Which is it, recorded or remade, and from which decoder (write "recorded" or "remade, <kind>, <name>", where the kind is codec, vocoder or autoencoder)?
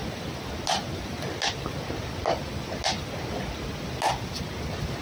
recorded